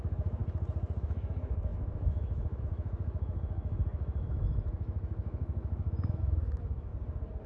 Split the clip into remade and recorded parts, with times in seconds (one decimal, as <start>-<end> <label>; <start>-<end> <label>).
0.0-0.4 remade; 0.4-1.0 recorded; 1.0-6.9 remade; 6.9-7.5 recorded